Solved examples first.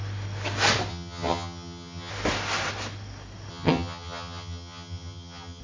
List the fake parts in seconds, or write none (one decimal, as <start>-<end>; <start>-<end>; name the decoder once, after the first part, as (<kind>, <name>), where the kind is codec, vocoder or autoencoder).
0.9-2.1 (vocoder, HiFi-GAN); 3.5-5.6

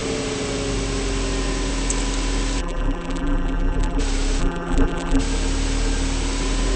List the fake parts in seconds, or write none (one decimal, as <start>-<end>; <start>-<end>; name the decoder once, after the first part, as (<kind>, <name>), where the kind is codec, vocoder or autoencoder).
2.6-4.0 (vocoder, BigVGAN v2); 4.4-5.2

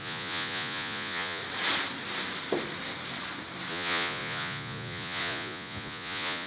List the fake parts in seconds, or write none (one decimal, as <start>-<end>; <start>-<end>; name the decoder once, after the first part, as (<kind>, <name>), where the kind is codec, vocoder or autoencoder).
0.0-1.4 (vocoder, Vocos); 3.7-6.5